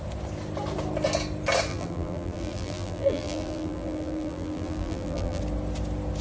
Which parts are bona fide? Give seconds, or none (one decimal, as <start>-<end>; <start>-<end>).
0.0-1.7; 5.4-6.2